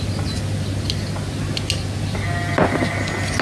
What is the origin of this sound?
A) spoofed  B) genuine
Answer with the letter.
B